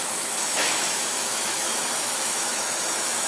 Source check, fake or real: fake